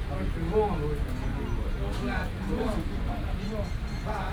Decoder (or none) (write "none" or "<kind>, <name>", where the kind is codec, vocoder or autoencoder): none